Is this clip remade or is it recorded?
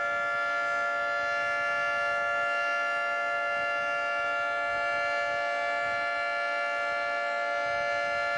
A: recorded